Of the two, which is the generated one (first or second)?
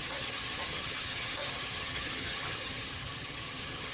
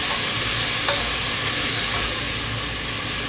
first